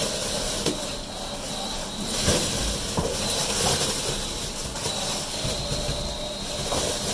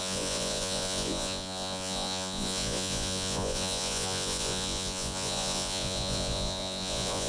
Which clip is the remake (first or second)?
second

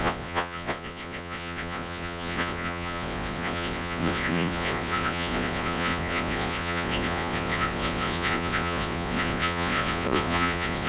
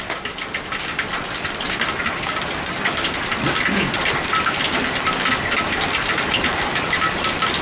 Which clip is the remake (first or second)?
first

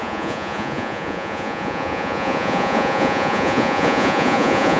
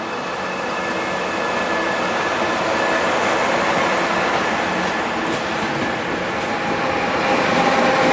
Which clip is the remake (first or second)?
first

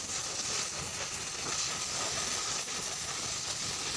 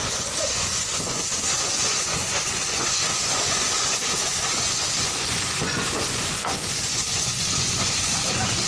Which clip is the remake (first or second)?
second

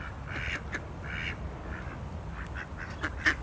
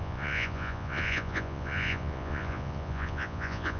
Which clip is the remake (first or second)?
second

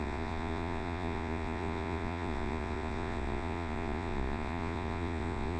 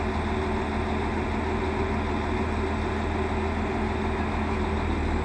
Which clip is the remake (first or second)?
first